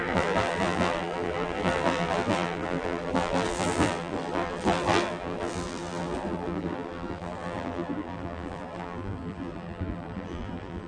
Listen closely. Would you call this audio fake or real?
fake